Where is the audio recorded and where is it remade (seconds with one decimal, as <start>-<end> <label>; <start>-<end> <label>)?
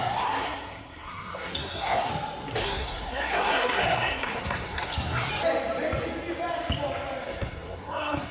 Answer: 0.0-2.1 remade; 2.1-2.6 recorded; 2.6-5.3 remade; 5.3-7.2 recorded; 7.2-8.3 remade